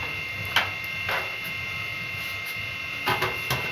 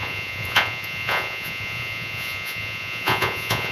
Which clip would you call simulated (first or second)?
second